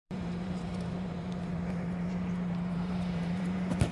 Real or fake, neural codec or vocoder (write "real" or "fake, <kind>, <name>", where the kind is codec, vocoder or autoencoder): fake, vocoder, BigVGAN v2